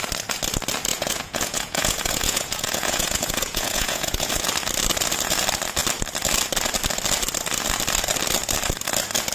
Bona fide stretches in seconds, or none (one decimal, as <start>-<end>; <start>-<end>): 0.0-0.9; 4.3-9.3